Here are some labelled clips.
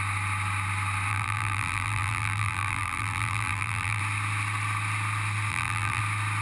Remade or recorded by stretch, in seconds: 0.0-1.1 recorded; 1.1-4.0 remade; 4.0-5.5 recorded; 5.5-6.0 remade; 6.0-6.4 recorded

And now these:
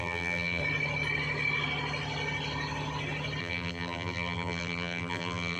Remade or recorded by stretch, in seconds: 0.0-0.6 remade; 0.6-3.4 recorded; 3.4-5.6 remade

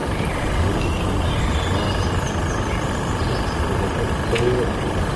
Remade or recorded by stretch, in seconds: 0.0-5.2 recorded

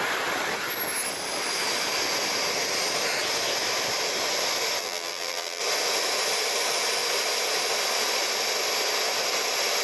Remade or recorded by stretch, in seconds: 0.0-4.8 recorded; 4.8-5.6 remade; 5.6-9.8 recorded

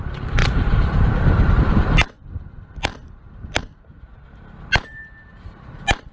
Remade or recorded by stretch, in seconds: 0.0-2.9 remade; 2.9-3.6 recorded; 3.6-4.1 remade; 4.1-5.3 recorded; 5.3-6.1 remade